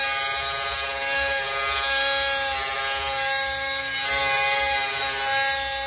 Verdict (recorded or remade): recorded